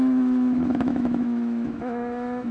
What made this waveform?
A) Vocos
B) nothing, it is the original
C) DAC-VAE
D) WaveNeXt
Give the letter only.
C